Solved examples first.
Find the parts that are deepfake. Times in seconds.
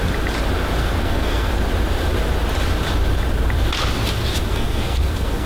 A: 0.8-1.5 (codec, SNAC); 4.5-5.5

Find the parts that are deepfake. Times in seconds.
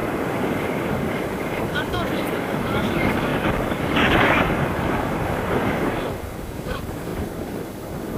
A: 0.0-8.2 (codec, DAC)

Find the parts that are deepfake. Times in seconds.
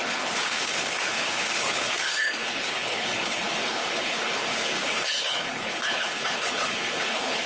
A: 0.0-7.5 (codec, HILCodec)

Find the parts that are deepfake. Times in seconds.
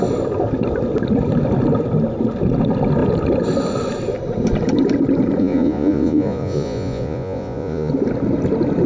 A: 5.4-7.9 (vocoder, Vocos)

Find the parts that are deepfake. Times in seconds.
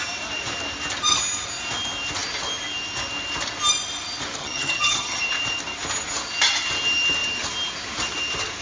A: 4.4-5.2 (vocoder, HiFi-GAN)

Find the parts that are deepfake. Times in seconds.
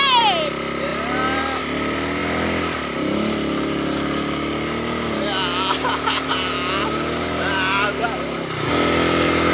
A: none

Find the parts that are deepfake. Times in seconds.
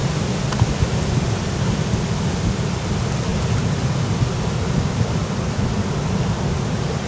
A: none